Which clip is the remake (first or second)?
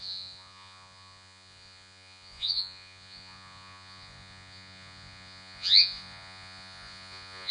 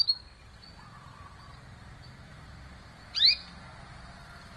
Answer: first